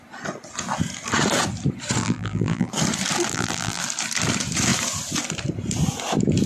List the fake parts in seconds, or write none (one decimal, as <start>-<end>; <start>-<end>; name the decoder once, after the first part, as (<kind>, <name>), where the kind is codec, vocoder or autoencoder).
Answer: 2.0-2.7 (vocoder, BigVGAN v2); 3.3-3.8